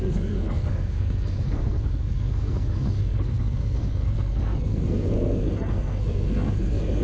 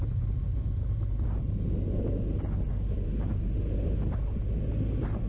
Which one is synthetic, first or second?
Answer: first